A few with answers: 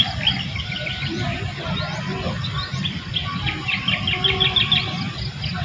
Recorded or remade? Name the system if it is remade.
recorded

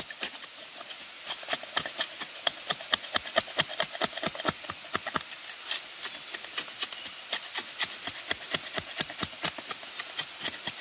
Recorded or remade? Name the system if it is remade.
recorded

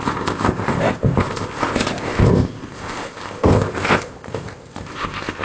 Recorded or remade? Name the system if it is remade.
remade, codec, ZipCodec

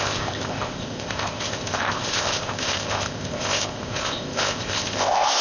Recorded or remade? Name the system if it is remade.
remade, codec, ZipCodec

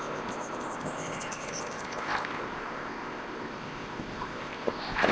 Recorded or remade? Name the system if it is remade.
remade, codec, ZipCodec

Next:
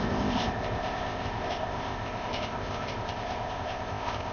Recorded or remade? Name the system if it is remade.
remade, codec, ZipCodec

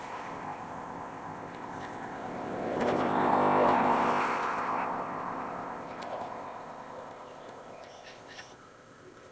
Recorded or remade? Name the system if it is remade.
remade, codec, ZipCodec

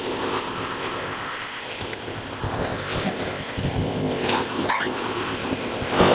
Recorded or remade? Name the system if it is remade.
remade, codec, ZipCodec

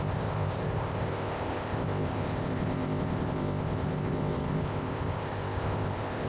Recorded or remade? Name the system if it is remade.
remade, codec, ZipCodec